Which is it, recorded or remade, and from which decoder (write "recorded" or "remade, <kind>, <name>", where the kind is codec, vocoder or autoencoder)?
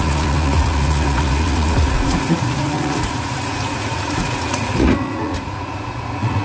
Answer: remade, vocoder, Vocos